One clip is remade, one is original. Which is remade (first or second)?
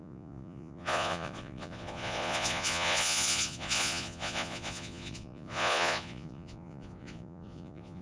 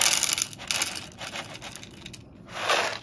first